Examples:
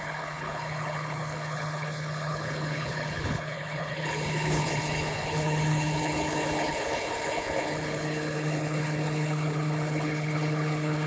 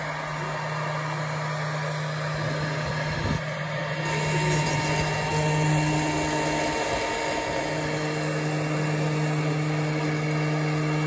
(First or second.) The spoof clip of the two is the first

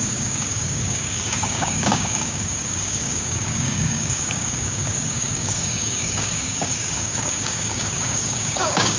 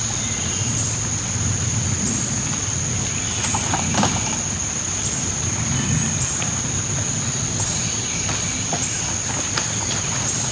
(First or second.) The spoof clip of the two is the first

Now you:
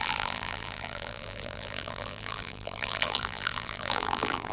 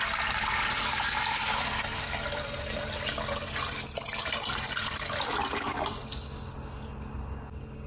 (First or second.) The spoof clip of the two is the first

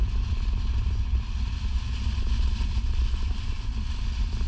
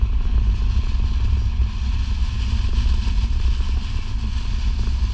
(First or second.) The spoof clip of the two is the first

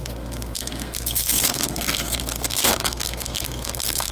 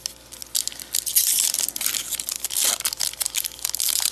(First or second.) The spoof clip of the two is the first